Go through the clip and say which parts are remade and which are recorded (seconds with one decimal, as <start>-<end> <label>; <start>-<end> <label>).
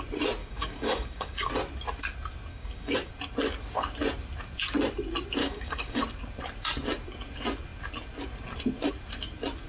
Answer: 0.0-0.4 recorded; 0.4-1.5 remade; 1.5-2.5 recorded; 2.5-3.1 remade; 3.1-5.4 recorded; 5.4-6.0 remade; 6.0-9.7 recorded